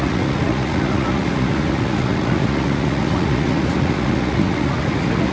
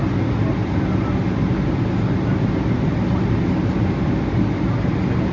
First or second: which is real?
second